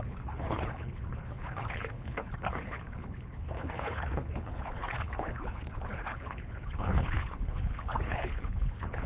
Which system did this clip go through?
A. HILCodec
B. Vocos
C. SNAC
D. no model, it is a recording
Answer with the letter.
A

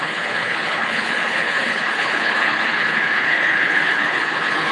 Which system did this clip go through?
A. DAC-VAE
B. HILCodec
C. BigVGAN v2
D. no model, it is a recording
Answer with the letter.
B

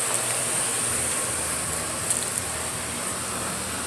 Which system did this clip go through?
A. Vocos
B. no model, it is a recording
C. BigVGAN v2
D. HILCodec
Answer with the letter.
B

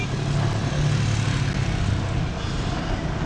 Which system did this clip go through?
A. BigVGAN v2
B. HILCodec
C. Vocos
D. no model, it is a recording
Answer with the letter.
D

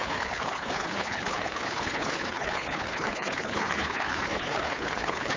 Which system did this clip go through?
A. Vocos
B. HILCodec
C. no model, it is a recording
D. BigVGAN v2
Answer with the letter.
B